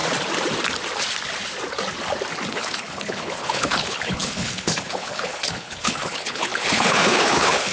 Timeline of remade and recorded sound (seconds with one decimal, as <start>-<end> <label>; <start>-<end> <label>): 0.0-2.5 recorded; 2.5-7.7 remade